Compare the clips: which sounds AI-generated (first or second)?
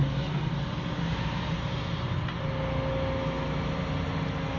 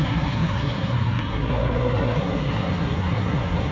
second